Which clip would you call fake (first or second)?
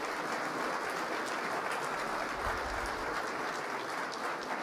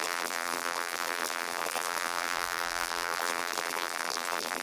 second